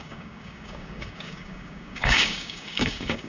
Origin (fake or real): fake